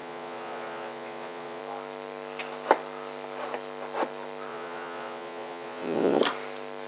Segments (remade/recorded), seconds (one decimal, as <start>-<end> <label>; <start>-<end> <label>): 0.0-1.6 remade; 1.6-4.5 recorded; 4.5-6.2 remade; 6.2-6.9 recorded